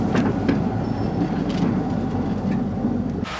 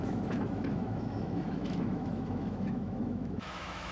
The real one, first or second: first